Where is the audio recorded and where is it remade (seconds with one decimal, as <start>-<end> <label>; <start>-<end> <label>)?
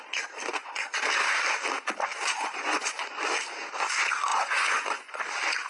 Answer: 0.0-0.5 recorded; 0.5-1.0 remade; 1.0-2.1 recorded; 2.1-3.2 remade; 3.2-4.3 recorded; 4.3-5.2 remade; 5.2-5.7 recorded